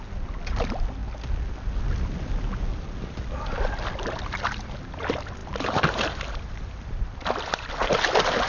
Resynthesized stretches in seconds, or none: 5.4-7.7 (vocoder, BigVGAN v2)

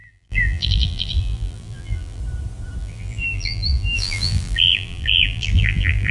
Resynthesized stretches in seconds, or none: 0.0-2.2 (vocoder, BigVGAN v2); 2.8-6.1